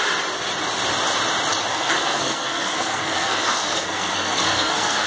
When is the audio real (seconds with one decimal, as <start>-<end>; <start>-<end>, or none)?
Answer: 0.0-1.7